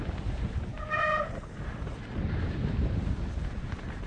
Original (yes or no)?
yes